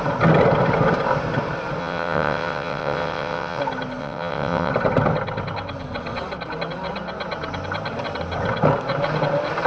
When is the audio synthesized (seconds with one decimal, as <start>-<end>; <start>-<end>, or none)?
1.8-3.6; 4.0-4.7

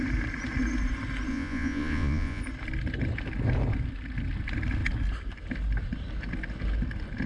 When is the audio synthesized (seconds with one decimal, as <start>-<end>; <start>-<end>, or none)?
1.3-2.4

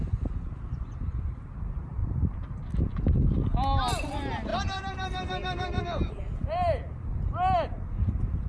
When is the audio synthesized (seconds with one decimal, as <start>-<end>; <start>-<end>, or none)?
none

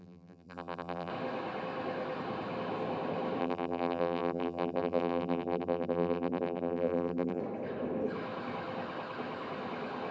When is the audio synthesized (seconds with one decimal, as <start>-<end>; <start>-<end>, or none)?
0.0-1.1; 3.4-7.4

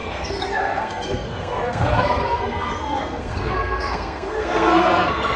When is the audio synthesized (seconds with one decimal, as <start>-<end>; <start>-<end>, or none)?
0.0-5.4

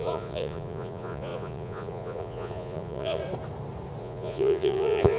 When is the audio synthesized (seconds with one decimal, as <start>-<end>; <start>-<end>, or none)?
0.0-3.2; 4.0-5.2

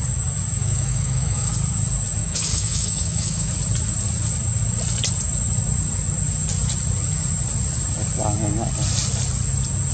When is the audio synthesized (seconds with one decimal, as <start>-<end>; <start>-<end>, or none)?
0.6-1.5; 2.2-3.5